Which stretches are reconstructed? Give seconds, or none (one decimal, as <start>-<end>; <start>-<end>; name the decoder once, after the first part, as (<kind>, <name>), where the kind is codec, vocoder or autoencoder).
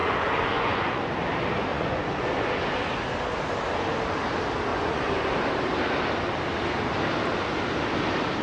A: 0.0-1.1 (vocoder, Vocos); 1.7-2.6; 4.7-5.4